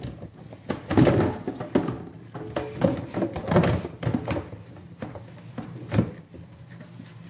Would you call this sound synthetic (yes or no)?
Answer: no